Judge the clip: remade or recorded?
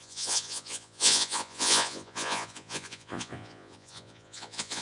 remade